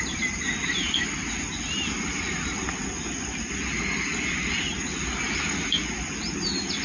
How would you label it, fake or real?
real